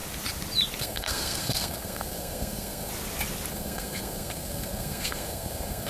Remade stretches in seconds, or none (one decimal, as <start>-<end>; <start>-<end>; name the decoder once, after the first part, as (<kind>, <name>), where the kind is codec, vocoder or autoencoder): 0.8-2.9 (codec, SNAC); 3.5-5.9